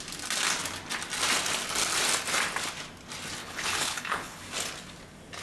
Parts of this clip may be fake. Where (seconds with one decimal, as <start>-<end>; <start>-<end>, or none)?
3.4-4.4